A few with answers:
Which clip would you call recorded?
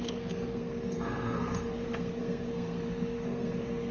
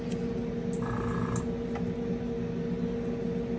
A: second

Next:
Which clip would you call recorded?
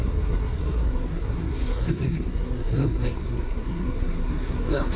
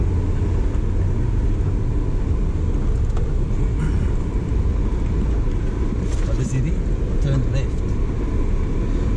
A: second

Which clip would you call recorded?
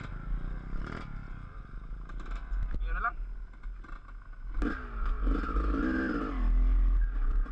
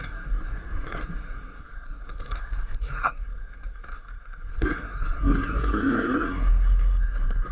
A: first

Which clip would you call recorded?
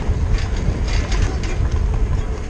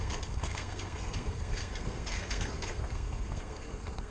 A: first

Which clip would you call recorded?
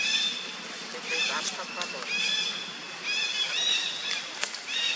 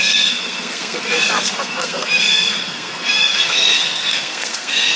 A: first